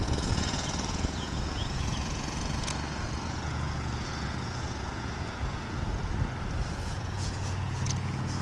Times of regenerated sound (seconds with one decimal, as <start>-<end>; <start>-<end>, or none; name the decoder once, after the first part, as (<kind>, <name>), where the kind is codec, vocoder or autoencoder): 0.0-6.0 (vocoder, Vocos); 6.7-8.4